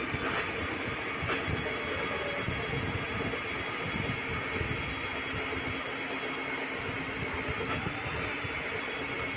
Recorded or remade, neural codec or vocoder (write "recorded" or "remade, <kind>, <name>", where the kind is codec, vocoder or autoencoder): recorded